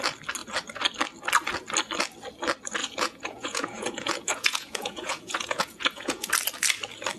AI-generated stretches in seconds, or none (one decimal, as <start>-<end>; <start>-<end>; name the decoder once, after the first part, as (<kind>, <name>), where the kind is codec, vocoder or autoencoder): 2.8-6.3 (vocoder, Vocos)